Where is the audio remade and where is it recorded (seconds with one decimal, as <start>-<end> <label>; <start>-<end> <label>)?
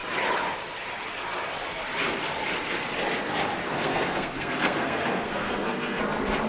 0.0-3.6 recorded; 3.6-6.0 remade; 6.0-6.5 recorded